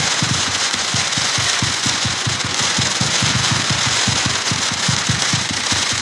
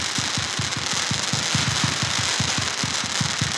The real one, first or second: second